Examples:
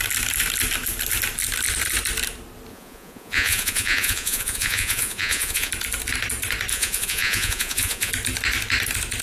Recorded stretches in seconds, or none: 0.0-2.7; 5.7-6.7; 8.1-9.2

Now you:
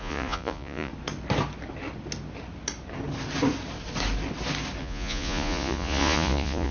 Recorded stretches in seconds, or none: 0.9-4.8